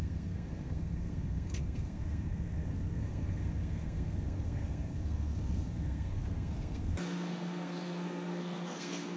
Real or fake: fake